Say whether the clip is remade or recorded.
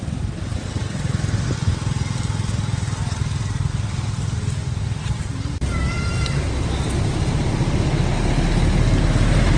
recorded